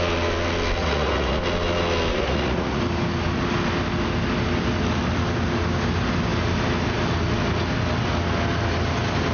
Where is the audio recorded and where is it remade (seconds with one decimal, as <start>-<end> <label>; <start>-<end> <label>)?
0.0-0.8 recorded; 0.8-1.4 remade; 1.4-2.1 recorded; 2.1-2.8 remade; 2.8-9.3 recorded